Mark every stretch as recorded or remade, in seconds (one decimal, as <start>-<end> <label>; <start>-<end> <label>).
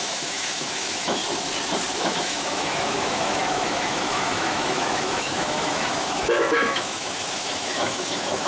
0.0-1.2 remade; 1.2-2.0 recorded; 2.0-8.5 remade